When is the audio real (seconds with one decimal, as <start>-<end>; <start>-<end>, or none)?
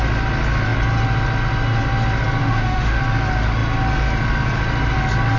0.0-2.4; 3.0-5.4